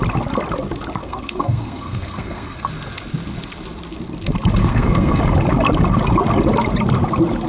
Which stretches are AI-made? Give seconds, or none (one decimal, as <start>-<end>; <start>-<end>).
1.0-2.7; 4.6-5.2